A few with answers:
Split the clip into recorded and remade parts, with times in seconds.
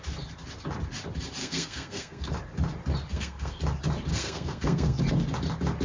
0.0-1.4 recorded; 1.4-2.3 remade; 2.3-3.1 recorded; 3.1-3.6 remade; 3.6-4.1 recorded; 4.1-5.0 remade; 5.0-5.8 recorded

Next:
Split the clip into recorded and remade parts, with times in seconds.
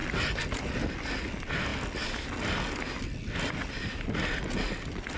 0.0-5.2 recorded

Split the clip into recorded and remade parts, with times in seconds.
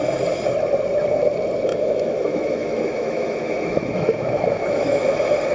0.0-1.7 recorded; 1.7-5.0 remade; 5.0-5.5 recorded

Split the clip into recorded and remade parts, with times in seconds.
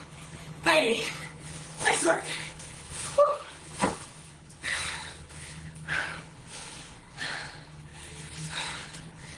0.0-9.4 remade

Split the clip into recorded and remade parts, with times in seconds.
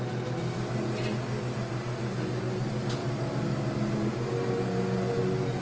0.0-3.0 recorded; 3.0-3.9 remade; 3.9-5.6 recorded